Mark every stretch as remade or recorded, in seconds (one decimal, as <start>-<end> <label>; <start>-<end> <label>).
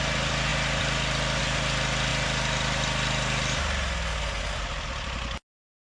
0.0-5.9 recorded